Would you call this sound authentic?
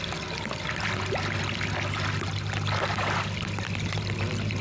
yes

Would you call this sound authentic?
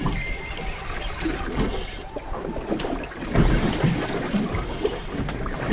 no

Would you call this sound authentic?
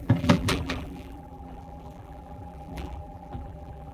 no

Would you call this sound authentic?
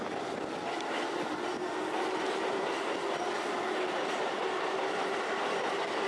yes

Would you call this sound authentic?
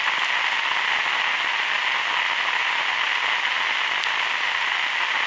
yes